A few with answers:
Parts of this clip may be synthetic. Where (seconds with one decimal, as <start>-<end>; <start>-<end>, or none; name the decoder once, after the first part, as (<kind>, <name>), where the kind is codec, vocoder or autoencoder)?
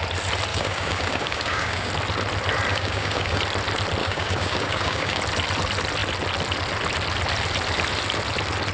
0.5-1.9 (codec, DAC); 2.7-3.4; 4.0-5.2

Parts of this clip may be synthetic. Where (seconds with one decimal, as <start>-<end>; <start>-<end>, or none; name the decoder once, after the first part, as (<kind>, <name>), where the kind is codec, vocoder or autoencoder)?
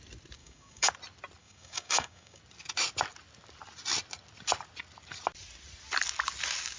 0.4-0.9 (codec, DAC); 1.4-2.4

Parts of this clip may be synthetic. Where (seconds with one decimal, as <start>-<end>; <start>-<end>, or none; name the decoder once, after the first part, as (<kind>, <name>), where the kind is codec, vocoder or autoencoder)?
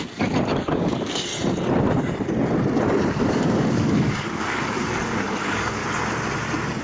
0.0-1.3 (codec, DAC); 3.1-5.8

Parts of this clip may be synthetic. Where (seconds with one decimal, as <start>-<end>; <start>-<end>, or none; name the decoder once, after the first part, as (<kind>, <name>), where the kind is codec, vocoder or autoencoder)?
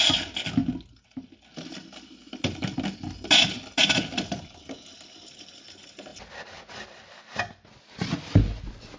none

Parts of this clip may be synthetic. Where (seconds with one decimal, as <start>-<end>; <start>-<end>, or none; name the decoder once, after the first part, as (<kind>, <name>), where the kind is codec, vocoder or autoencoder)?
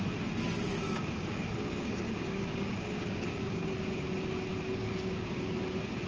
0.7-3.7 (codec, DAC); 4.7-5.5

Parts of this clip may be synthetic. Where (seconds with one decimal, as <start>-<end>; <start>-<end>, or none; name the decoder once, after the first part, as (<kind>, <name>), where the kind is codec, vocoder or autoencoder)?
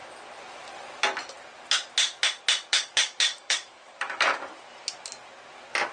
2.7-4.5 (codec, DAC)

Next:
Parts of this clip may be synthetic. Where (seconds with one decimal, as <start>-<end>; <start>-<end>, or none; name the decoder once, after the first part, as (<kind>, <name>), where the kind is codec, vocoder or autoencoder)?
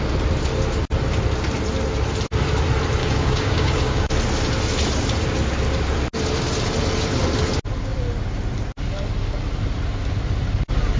3.0-4.1 (codec, DAC)